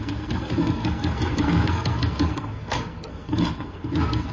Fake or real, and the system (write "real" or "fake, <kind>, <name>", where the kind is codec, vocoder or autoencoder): fake, codec, SNAC